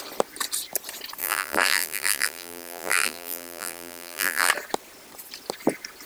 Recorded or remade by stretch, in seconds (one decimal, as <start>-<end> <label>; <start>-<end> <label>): 0.0-1.2 recorded; 1.2-4.5 remade; 4.5-6.1 recorded